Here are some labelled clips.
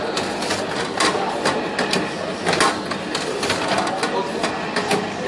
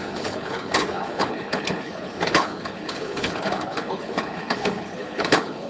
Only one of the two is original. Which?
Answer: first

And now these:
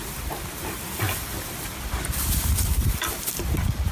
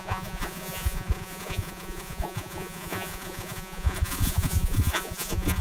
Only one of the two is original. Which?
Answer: first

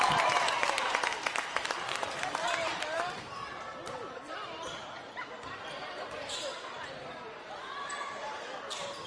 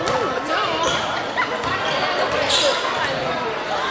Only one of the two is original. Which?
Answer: second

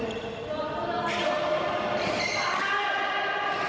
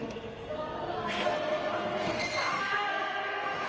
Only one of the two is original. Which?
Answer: first